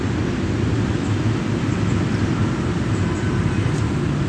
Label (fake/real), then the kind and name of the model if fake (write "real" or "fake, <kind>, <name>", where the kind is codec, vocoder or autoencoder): real